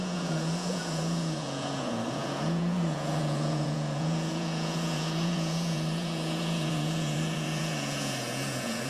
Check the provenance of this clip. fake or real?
fake